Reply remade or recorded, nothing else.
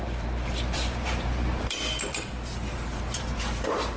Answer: remade